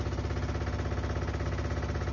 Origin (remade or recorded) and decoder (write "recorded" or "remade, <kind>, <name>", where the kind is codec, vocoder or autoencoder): recorded